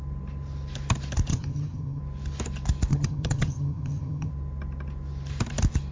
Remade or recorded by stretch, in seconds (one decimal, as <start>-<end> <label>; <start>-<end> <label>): 0.0-1.3 recorded; 1.3-2.0 remade; 2.0-2.9 recorded; 2.9-4.3 remade; 4.3-5.9 recorded